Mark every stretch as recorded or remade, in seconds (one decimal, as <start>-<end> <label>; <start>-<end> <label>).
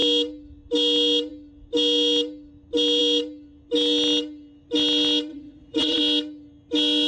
0.0-5.3 recorded; 5.3-6.0 remade; 6.0-7.1 recorded